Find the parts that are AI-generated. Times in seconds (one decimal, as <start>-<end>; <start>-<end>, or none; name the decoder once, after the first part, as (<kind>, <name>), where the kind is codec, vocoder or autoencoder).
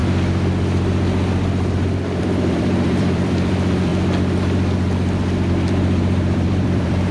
2.2-3.9 (vocoder, BigVGAN v2); 5.5-7.1